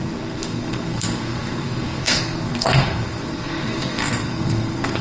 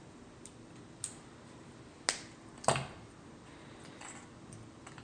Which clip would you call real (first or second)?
second